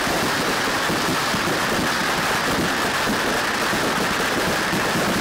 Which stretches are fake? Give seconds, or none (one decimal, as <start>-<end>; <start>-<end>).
none